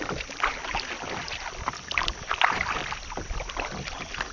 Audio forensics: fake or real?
real